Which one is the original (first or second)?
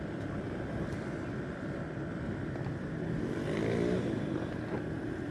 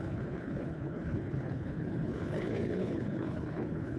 first